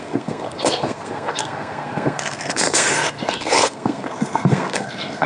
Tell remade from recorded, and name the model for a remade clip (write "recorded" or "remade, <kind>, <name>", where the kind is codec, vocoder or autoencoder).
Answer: remade, codec, SNAC